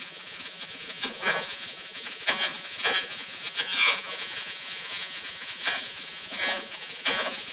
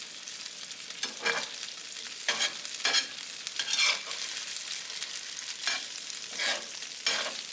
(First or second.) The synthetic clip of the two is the first